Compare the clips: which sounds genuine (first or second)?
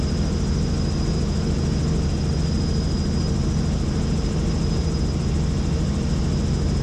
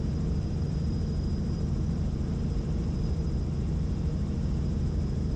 first